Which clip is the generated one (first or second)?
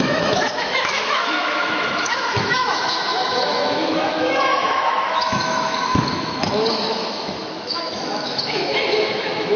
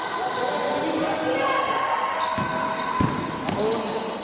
first